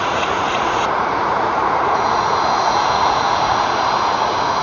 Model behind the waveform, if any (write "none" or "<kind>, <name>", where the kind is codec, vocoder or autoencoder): vocoder, Vocos